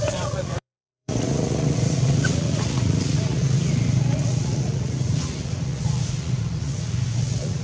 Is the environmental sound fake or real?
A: fake